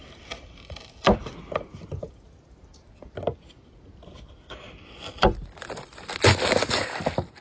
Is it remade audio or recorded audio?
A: recorded